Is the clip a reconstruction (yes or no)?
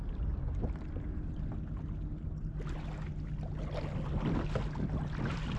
no